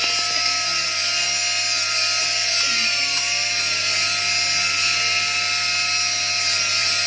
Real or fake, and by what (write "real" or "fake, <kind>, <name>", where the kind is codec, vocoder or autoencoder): real